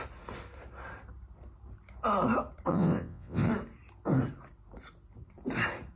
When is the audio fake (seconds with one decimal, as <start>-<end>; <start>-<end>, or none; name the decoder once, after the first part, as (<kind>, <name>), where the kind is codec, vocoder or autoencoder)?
2.7-3.5 (vocoder, WaveNeXt)